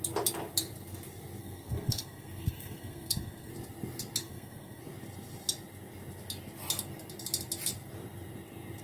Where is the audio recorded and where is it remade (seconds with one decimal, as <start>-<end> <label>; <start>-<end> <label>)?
0.0-1.4 recorded; 1.4-3.5 remade; 3.5-4.2 recorded; 4.2-4.8 remade; 4.8-8.8 recorded